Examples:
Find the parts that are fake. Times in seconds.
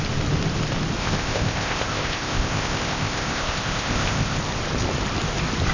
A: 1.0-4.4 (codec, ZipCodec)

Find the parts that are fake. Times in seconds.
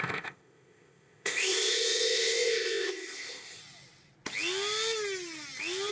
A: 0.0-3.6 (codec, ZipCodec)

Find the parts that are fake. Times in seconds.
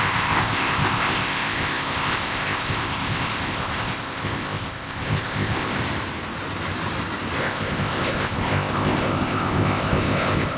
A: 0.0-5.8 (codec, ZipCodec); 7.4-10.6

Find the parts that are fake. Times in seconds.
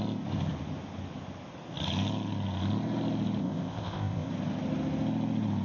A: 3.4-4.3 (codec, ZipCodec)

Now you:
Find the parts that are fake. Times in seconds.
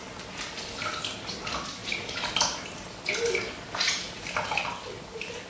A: none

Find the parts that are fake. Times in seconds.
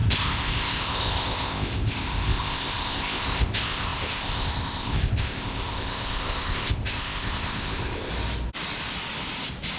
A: 0.0-8.1 (codec, ZipCodec)